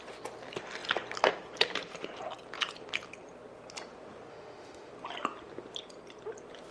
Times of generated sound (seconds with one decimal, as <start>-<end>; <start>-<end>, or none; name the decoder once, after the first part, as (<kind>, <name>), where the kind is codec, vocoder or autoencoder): 4.3-4.9 (autoencoder, DAC-VAE)